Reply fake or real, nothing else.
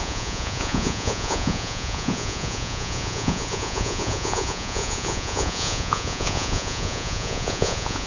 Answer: fake